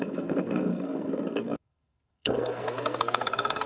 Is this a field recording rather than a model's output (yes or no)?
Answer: no